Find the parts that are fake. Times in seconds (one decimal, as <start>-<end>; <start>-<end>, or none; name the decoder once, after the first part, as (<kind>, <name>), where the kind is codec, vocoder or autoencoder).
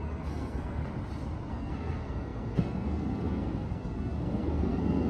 0.0-0.8 (codec, SNAC); 1.5-5.1